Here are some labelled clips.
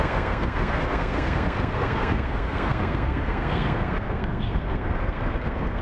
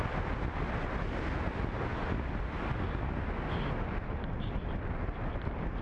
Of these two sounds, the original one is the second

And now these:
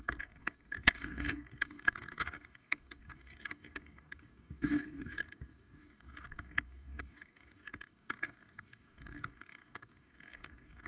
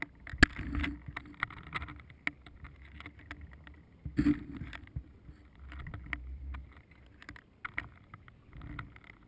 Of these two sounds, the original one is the second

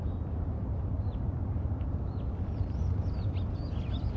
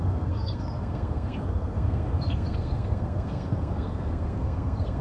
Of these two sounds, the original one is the first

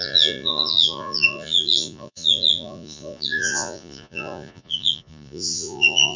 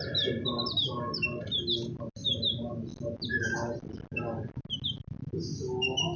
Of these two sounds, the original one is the second